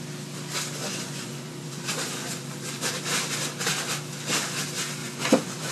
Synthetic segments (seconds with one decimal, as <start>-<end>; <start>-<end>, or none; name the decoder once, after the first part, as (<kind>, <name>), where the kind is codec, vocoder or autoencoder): 0.8-2.9 (vocoder, Vocos); 5.0-5.7